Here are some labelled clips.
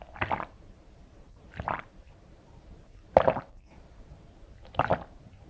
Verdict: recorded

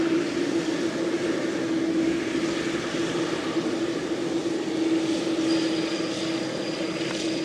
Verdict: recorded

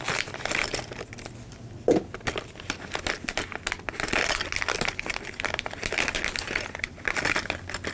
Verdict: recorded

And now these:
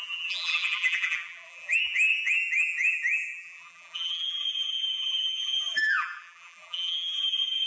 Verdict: remade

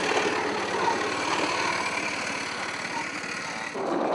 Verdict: recorded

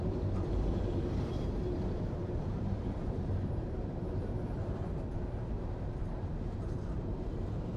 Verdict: remade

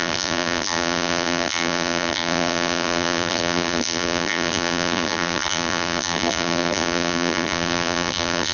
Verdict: remade